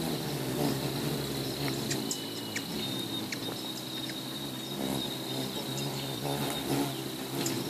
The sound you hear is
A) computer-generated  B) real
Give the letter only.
B